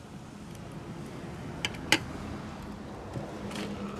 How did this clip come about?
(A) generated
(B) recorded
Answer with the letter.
B